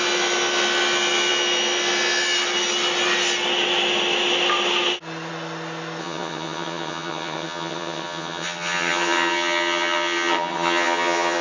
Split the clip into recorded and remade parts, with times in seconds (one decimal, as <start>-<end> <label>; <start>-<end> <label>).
0.0-6.0 recorded; 6.0-11.4 remade